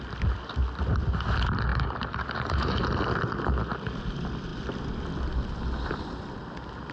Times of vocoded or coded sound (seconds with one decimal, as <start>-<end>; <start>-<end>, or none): 1.7-2.8